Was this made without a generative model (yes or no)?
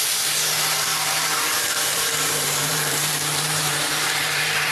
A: no